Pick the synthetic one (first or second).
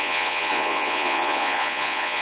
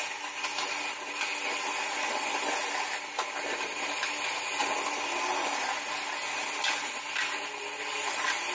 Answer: first